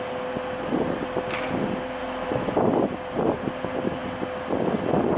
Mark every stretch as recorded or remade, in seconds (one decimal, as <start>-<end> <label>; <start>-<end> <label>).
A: 0.0-2.0 recorded; 2.0-2.6 remade; 2.6-5.2 recorded